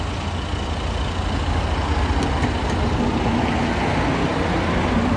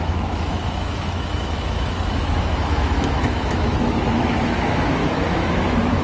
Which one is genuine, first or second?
first